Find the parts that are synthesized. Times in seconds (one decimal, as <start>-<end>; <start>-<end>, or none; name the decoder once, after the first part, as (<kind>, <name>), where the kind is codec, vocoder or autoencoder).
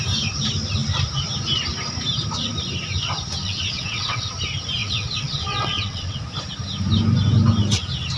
3.4-4.3 (vocoder, WaveNeXt); 4.8-6.2